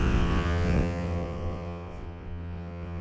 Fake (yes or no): yes